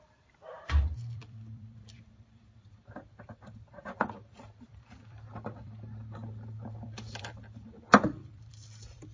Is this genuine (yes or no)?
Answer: no